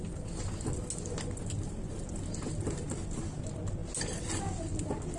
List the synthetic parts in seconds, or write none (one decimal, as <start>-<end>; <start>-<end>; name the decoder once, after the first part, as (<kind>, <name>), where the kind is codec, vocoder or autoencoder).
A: none